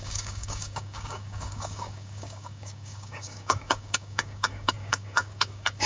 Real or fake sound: fake